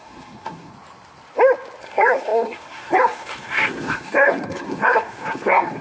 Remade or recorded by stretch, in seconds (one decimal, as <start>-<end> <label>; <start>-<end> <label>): 0.0-0.7 remade; 0.7-1.8 recorded; 1.8-5.8 remade